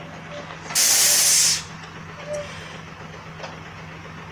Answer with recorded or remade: recorded